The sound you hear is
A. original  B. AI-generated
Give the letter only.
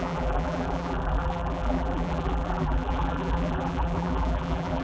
B